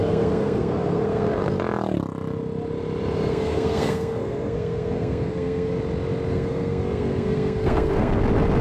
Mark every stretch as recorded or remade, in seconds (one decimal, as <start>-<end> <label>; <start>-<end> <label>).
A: 0.0-1.5 remade; 1.5-3.3 recorded; 3.3-5.8 remade; 5.8-6.3 recorded; 6.3-8.1 remade; 8.1-8.6 recorded